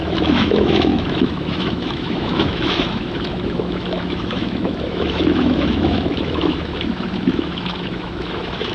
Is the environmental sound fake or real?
fake